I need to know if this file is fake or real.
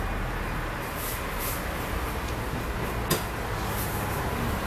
real